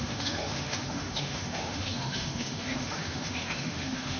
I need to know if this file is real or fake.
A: fake